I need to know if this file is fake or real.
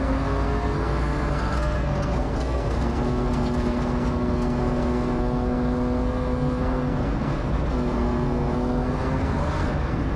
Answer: fake